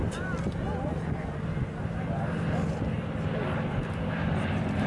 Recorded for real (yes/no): yes